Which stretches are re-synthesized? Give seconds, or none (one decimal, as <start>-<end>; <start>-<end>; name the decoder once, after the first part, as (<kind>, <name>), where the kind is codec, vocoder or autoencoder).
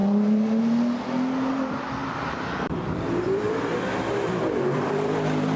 0.0-0.6 (vocoder, BigVGAN v2); 2.0-5.6